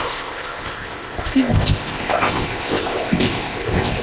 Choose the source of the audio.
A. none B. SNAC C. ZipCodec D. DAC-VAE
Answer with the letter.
C